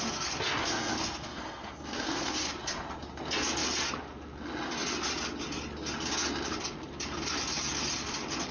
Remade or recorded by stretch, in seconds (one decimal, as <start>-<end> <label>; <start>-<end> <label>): 0.0-0.6 recorded; 0.6-2.5 remade; 2.5-8.5 recorded

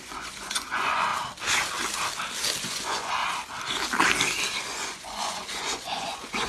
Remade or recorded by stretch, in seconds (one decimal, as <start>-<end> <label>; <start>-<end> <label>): 0.0-1.1 remade; 1.1-2.6 recorded; 2.6-3.2 remade; 3.2-4.6 recorded; 4.6-6.5 remade